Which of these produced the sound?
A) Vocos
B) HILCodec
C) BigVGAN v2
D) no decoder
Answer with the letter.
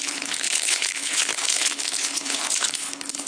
B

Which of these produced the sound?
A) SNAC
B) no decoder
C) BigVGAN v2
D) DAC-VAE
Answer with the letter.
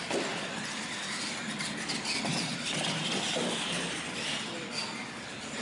B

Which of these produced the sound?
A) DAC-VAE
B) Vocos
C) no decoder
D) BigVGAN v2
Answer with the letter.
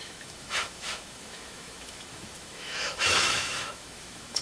A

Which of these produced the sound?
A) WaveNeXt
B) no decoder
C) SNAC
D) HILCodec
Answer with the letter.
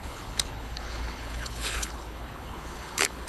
D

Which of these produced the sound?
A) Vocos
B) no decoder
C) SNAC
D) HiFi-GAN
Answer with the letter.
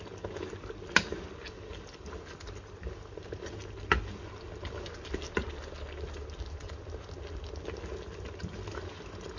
B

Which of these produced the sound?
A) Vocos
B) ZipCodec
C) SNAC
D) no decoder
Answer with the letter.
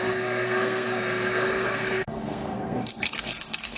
C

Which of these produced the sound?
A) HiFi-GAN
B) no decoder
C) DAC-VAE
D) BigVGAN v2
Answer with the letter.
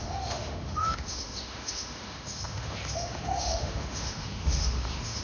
C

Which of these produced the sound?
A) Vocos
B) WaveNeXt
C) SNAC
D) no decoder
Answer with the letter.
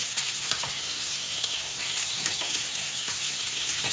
C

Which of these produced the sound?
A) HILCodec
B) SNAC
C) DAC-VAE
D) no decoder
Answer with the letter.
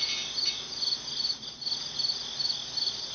D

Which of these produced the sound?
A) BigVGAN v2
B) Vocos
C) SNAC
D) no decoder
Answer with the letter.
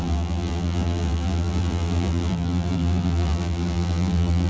A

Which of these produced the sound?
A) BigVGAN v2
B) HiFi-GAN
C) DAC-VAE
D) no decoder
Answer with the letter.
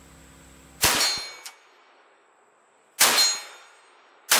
D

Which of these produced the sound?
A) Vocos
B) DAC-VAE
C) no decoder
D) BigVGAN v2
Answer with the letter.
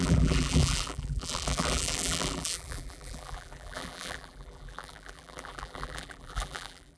D